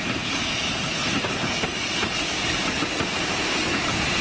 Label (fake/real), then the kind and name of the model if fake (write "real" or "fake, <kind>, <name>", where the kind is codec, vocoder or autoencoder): real